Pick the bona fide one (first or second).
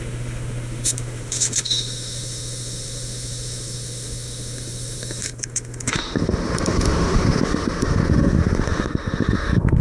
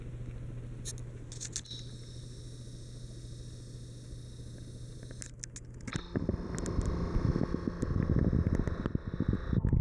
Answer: second